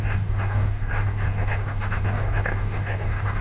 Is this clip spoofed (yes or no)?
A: yes